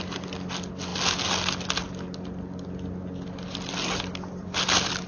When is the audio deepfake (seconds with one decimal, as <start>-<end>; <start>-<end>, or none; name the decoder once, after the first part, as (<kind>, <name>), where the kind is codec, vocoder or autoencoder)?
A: none